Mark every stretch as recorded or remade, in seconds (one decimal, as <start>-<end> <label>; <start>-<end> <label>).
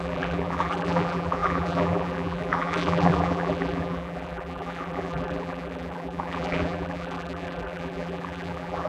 0.0-8.9 remade